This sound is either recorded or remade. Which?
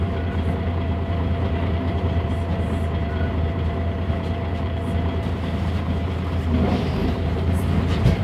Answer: remade